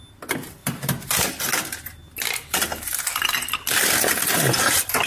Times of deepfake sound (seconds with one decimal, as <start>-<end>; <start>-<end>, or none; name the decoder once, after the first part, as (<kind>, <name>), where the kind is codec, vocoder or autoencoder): none